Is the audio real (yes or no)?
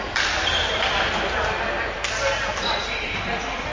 no